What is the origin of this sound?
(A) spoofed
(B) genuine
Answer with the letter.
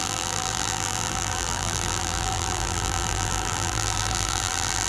A